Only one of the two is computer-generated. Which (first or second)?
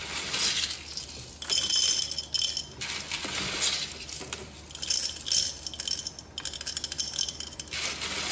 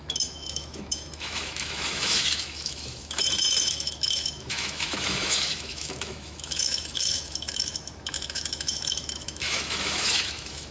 second